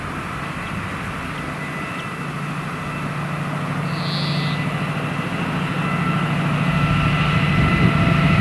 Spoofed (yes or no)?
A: no